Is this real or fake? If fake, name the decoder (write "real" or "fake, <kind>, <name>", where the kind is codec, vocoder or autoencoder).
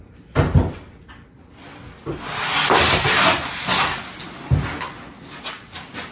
real